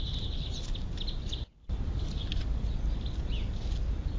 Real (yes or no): yes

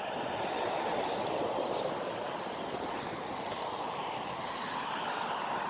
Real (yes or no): yes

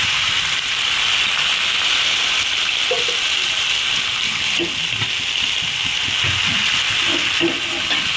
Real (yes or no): yes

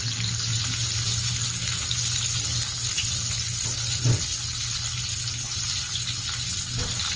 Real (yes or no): yes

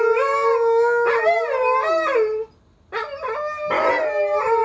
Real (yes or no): yes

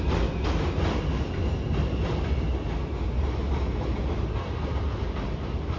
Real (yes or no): yes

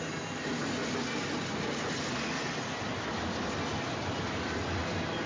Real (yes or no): yes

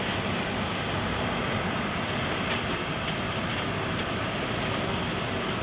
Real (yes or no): yes